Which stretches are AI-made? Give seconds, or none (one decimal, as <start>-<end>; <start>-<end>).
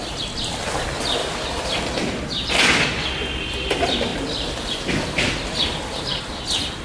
1.2-1.8